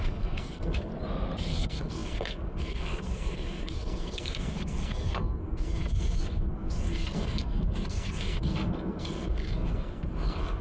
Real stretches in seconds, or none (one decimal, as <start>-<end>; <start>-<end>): 0.9-1.4